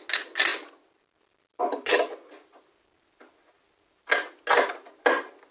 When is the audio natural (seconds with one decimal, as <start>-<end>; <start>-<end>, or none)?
0.0-5.5